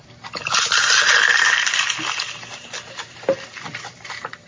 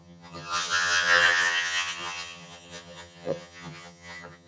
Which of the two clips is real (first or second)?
first